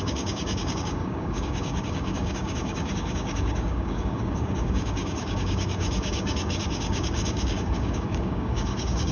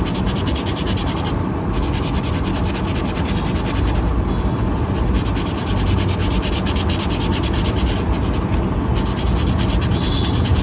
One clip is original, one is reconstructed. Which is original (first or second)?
second